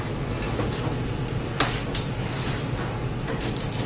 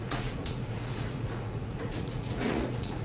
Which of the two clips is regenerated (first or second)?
second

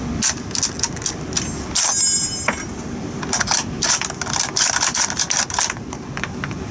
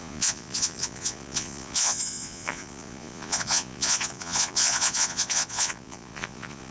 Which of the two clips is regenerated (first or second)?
second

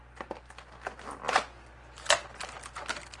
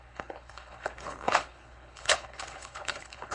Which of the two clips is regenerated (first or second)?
second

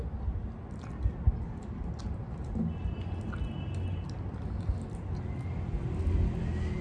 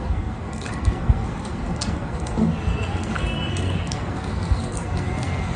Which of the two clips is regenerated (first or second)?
second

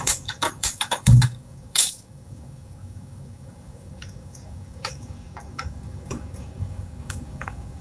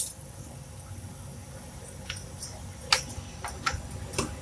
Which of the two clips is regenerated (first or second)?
first